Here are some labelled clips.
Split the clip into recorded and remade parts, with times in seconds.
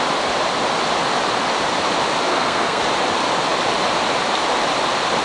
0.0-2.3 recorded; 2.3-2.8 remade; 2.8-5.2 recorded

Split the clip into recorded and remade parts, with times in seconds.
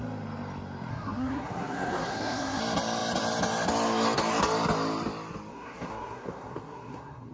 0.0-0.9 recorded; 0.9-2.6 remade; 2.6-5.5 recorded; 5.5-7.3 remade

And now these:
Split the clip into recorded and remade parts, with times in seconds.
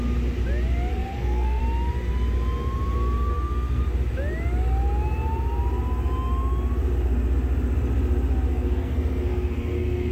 0.0-0.9 recorded; 0.9-1.6 remade; 1.6-3.3 recorded; 3.3-3.8 remade; 3.8-8.5 recorded; 8.5-10.1 remade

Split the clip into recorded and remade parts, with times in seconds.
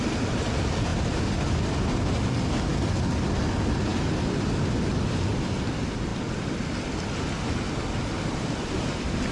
0.0-9.3 recorded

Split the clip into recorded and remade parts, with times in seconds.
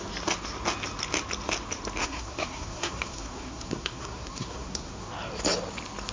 0.0-2.0 recorded; 2.0-5.1 remade; 5.1-6.1 recorded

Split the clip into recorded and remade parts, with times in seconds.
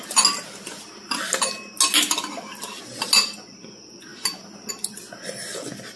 0.0-6.0 recorded